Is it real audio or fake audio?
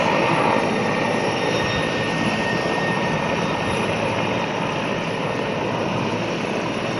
fake